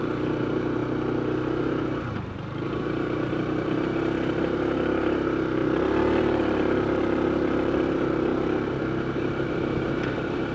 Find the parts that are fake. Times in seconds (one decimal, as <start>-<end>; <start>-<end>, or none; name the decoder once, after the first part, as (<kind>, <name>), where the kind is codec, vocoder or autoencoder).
0.0-0.8 (vocoder, BigVGAN v2); 2.0-5.6; 6.2-8.3; 8.8-10.5